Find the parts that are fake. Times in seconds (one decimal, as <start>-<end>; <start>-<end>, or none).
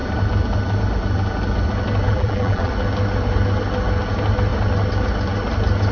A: 2.1-2.7